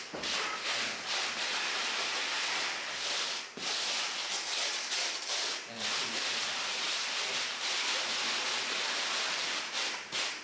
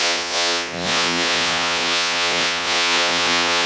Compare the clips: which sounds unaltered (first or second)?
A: first